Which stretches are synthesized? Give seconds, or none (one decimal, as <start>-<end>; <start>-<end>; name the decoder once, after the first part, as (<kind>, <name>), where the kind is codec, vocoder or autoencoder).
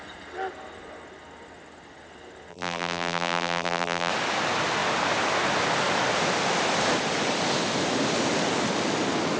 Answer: 2.5-4.1 (vocoder, BigVGAN v2)